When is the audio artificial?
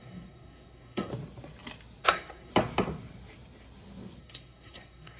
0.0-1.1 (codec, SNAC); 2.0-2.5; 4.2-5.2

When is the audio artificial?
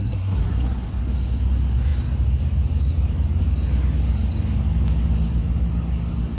0.0-0.9 (codec, SNAC)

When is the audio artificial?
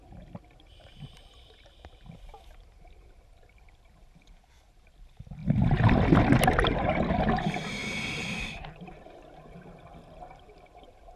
none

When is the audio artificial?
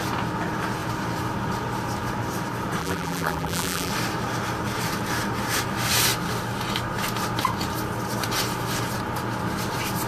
2.8-3.9 (vocoder, BigVGAN v2)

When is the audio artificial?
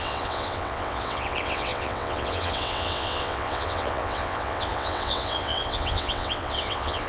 0.0-7.1 (vocoder, WaveNeXt)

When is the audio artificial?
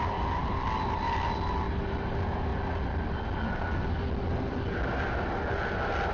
none